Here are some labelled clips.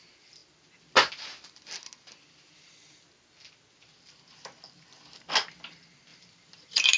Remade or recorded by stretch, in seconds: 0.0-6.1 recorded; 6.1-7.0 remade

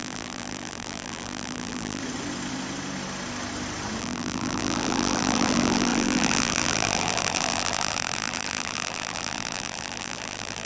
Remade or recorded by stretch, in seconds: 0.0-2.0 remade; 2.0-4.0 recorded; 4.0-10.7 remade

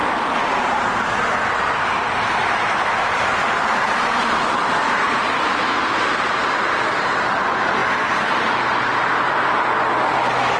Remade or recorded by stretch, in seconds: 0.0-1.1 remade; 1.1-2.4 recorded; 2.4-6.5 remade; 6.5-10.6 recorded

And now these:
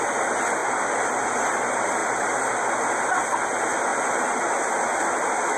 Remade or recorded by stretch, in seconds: 0.0-0.6 recorded; 0.6-1.6 remade; 1.6-2.0 recorded; 2.0-2.7 remade; 2.7-5.6 recorded

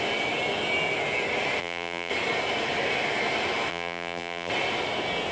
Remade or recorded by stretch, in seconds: 0.0-1.6 recorded; 1.6-2.1 remade; 2.1-3.7 recorded; 3.7-4.5 remade; 4.5-5.3 recorded

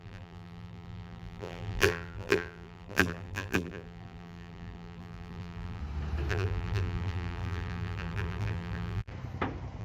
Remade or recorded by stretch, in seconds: 0.0-5.8 remade; 5.8-6.3 recorded; 6.3-9.1 remade; 9.1-9.8 recorded